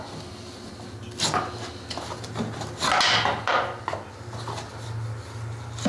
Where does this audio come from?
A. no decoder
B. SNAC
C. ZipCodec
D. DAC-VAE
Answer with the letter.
A